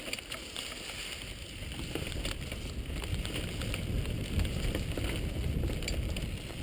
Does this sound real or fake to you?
real